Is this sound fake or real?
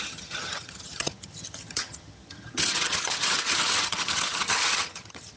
fake